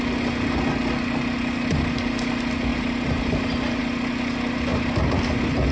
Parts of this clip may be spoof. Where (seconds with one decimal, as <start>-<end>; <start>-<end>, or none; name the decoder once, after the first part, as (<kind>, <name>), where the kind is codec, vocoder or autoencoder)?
2.7-3.8 (vocoder, BigVGAN v2)